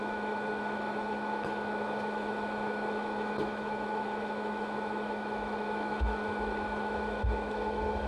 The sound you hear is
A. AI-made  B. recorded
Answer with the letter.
A